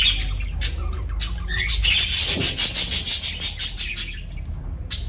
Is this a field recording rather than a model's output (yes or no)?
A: yes